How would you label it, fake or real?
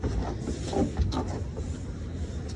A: real